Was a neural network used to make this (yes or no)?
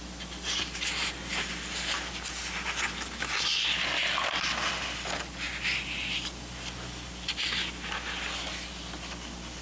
no